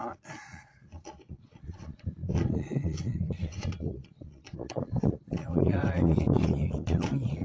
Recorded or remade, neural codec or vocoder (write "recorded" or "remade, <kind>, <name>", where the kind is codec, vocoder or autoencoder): remade, vocoder, Vocos